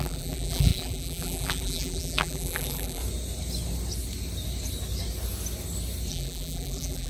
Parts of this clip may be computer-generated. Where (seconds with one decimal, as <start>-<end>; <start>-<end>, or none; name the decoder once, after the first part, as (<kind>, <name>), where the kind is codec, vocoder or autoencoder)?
0.0-3.0 (vocoder, BigVGAN v2); 6.1-7.1